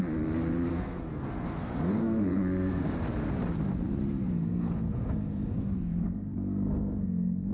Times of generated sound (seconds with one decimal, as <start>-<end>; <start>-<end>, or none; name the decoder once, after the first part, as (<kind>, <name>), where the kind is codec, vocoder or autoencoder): 0.7-2.9 (codec, SNAC); 4.0-7.5